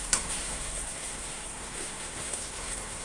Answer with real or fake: fake